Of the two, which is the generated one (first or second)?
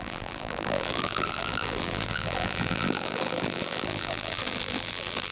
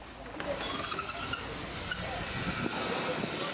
first